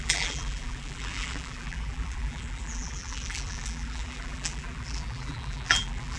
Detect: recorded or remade remade